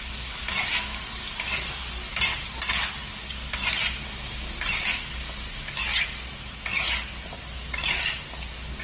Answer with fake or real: real